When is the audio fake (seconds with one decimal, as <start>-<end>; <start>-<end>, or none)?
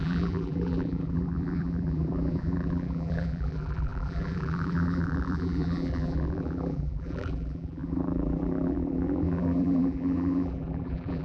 0.0-11.2